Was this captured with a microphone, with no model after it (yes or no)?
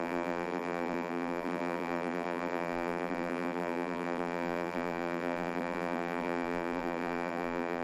no